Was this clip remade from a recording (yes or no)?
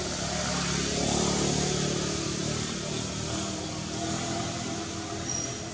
no